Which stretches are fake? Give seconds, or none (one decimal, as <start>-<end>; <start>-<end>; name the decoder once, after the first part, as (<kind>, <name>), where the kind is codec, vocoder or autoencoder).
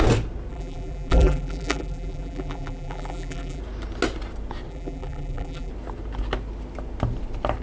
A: 0.5-3.6 (vocoder, BigVGAN v2); 4.7-5.7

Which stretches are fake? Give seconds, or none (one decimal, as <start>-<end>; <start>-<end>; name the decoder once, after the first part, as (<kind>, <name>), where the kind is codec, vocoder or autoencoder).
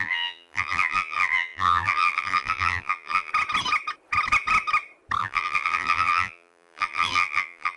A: 0.0-3.3 (vocoder, BigVGAN v2); 5.2-7.8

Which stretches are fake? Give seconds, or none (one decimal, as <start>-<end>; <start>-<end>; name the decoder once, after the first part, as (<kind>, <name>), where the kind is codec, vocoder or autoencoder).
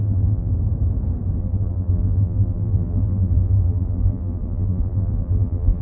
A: 0.0-0.5 (vocoder, BigVGAN v2); 1.4-5.8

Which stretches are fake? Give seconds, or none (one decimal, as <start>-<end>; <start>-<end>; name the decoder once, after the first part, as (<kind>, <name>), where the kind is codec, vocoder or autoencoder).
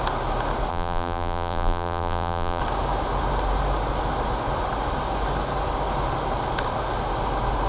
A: 0.7-2.6 (vocoder, BigVGAN v2)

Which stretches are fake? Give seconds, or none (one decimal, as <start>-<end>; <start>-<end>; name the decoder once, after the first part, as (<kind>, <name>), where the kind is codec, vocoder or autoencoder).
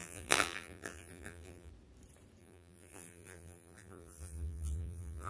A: 0.0-1.7 (vocoder, BigVGAN v2); 2.4-5.3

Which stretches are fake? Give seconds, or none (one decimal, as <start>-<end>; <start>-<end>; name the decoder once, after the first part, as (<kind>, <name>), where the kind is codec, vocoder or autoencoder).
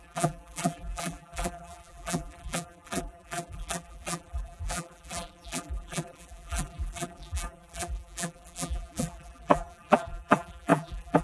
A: 0.0-11.2 (vocoder, BigVGAN v2)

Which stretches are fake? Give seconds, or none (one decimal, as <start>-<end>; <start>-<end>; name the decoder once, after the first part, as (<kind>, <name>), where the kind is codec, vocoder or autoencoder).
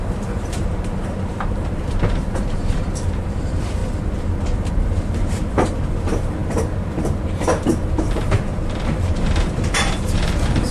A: 0.0-3.8 (vocoder, BigVGAN v2); 4.7-10.7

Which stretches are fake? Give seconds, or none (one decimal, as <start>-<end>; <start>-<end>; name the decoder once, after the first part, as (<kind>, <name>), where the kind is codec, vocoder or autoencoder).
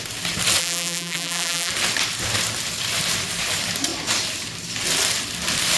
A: 0.6-1.7 (vocoder, BigVGAN v2)